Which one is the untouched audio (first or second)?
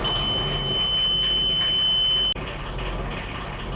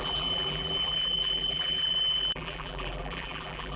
first